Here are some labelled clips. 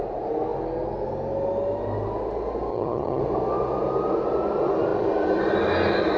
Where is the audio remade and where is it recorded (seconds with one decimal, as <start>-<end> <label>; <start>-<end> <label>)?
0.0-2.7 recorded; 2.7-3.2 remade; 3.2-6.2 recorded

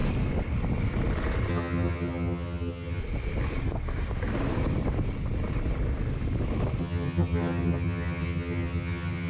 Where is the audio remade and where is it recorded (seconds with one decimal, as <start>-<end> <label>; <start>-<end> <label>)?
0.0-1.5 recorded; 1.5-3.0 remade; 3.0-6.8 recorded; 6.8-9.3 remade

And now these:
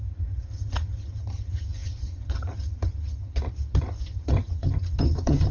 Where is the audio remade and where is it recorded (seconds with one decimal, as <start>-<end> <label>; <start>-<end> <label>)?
0.0-5.5 remade